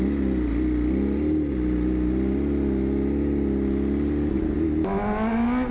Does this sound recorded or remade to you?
recorded